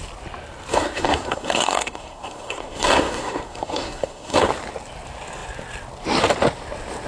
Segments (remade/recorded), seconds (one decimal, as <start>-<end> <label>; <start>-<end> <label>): 0.0-0.7 recorded; 0.7-4.5 remade; 4.5-7.1 recorded